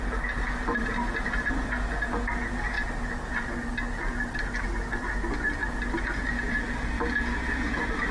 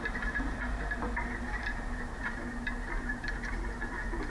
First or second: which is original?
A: first